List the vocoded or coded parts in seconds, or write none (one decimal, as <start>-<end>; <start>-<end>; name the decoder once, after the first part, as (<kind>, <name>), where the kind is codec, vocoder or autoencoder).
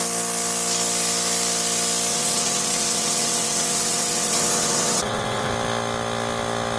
2.1-5.5 (vocoder, WaveNeXt)